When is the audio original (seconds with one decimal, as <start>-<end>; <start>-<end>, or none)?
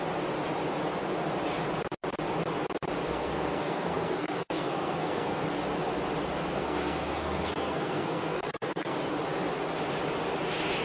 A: 0.0-3.0; 5.4-6.4; 9.0-10.8